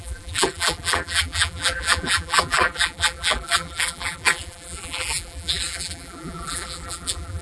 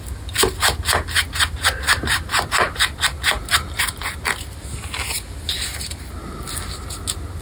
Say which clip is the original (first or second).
second